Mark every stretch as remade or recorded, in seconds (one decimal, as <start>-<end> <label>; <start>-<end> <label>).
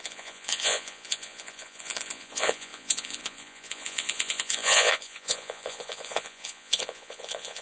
0.0-7.6 remade